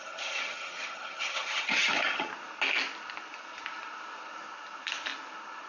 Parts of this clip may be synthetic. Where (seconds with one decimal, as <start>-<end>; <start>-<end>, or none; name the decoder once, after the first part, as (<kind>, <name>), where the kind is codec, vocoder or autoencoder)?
0.0-2.3 (vocoder, HiFi-GAN)